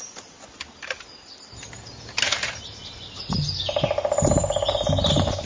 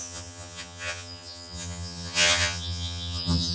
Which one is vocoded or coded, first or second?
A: second